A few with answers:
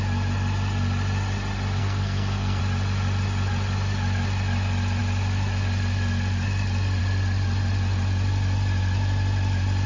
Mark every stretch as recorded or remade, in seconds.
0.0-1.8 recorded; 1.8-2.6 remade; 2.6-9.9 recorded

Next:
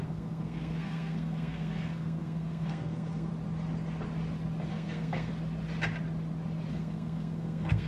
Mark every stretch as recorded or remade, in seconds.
0.0-3.3 remade; 3.3-4.7 recorded; 4.7-5.3 remade; 5.3-6.7 recorded; 6.7-7.9 remade

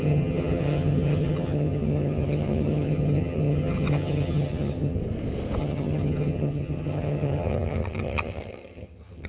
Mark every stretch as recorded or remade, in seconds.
0.0-5.0 remade; 5.0-5.6 recorded; 5.6-9.3 remade

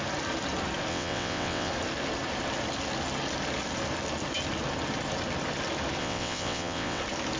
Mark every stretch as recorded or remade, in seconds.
0.0-0.9 recorded; 0.9-1.7 remade; 1.7-6.0 recorded; 6.0-7.0 remade; 7.0-7.4 recorded

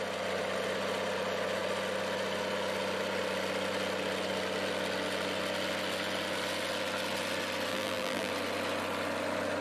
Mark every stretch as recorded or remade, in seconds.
0.0-7.7 recorded; 7.7-8.3 remade; 8.3-9.6 recorded

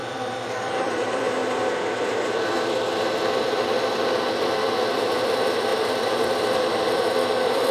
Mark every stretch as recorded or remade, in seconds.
0.0-1.4 remade; 1.4-3.2 recorded; 3.2-7.7 remade

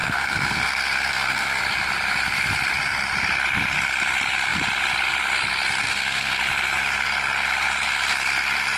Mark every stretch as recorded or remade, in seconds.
0.0-1.6 remade; 1.6-5.8 recorded; 5.8-6.4 remade; 6.4-8.8 recorded

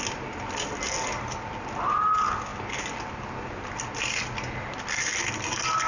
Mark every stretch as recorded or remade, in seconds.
0.0-5.9 recorded